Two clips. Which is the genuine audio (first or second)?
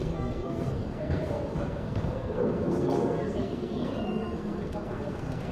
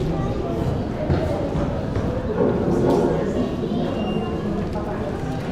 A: second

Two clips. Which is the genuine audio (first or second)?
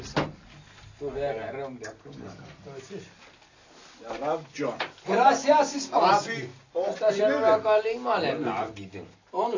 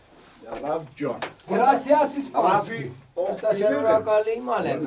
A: first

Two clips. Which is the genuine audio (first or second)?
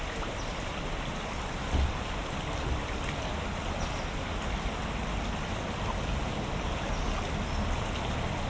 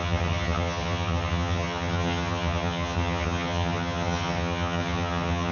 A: first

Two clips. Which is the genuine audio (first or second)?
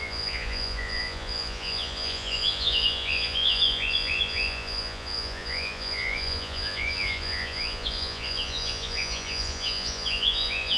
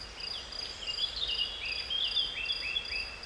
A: second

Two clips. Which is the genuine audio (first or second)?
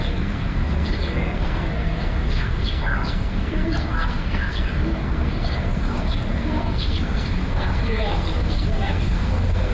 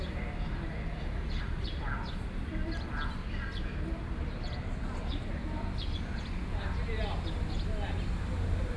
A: second